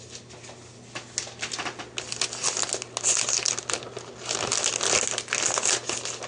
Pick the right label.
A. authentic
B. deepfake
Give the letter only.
A